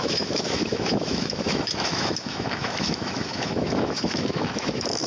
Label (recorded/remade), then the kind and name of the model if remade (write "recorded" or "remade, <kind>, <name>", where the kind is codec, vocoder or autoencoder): remade, autoencoder, DAC-VAE